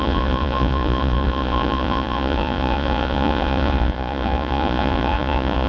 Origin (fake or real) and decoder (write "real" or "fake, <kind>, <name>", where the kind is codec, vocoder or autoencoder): fake, vocoder, Vocos